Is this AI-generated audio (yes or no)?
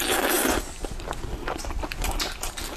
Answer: no